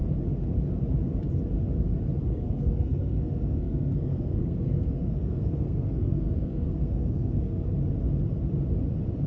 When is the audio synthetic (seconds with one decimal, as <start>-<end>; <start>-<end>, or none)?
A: 2.3-7.6